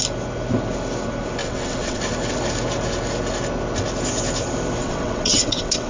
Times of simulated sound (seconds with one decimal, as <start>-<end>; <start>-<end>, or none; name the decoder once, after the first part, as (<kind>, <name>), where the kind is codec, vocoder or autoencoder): 1.4-2.0 (vocoder, WaveNeXt); 4.8-5.9